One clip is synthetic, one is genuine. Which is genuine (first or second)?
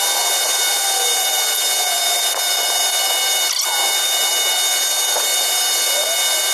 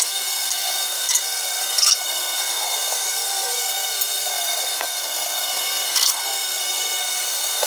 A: first